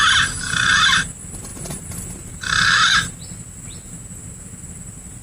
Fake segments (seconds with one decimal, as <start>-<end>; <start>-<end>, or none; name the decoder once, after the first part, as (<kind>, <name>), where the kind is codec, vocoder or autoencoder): 1.5-3.2 (vocoder, BigVGAN v2)